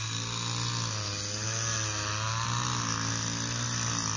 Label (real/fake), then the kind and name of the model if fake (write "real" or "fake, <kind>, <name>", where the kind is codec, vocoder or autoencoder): real